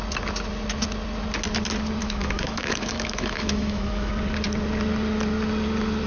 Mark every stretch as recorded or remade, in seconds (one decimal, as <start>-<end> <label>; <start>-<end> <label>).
0.0-2.0 recorded; 2.0-4.1 remade; 4.1-6.1 recorded